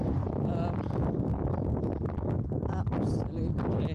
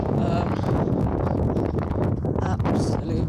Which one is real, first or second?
first